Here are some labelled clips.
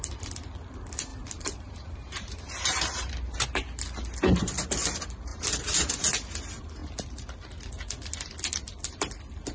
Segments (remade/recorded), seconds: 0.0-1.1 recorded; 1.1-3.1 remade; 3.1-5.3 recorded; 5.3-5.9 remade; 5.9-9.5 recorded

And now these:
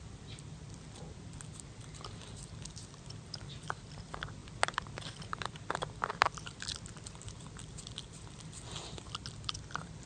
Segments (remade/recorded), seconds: 0.0-10.1 recorded

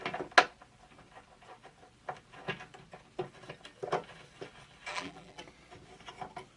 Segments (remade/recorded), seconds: 0.0-4.9 recorded; 4.9-5.4 remade; 5.4-6.6 recorded

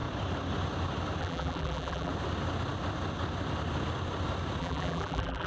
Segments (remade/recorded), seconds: 0.0-1.2 recorded; 1.2-2.1 remade; 2.1-4.6 recorded; 4.6-5.5 remade